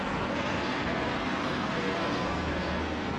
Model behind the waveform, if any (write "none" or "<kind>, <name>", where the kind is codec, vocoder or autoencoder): codec, SNAC